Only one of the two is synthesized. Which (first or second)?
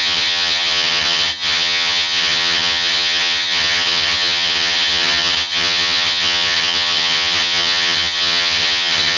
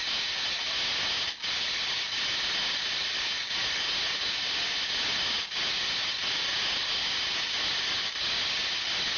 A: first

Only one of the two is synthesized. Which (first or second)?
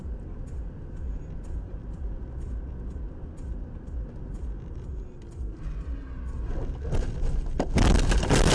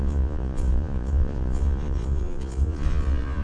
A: second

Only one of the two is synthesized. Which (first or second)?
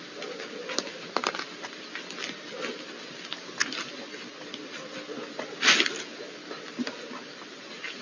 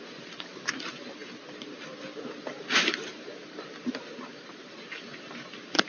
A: second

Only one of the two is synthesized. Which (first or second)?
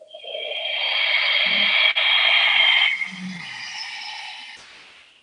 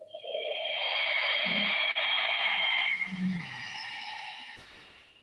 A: second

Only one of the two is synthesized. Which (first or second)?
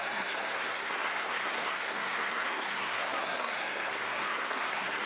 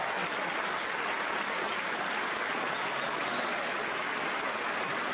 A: first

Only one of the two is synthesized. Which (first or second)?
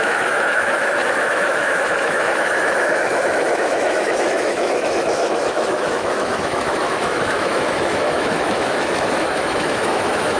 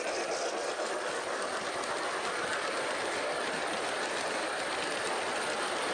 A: first